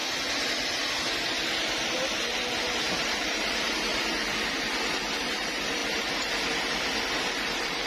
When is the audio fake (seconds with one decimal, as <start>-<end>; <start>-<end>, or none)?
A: 3.0-3.9; 5.1-5.8; 7.3-7.9